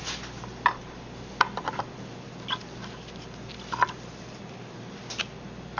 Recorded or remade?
recorded